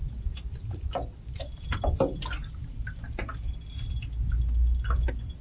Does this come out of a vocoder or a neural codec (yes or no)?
no